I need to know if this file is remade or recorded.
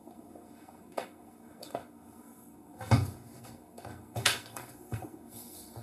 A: remade